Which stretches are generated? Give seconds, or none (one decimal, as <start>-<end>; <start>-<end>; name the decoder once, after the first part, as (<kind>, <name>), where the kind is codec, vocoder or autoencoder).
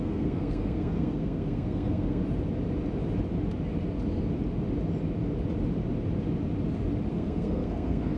0.0-2.2 (codec, SNAC); 7.1-8.2